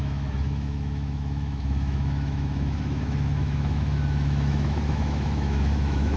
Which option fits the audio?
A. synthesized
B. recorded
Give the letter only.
A